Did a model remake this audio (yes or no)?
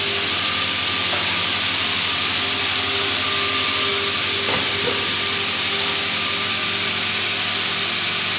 no